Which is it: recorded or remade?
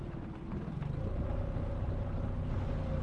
recorded